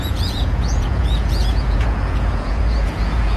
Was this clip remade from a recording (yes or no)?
yes